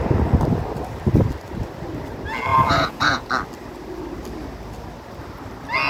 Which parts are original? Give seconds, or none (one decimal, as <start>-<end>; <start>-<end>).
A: 0.0-2.5; 3.3-5.9